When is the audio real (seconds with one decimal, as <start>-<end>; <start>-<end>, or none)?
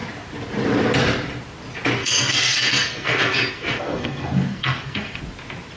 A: 0.0-2.0; 5.2-5.8